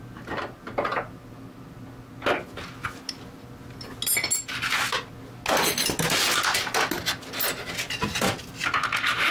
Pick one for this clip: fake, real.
real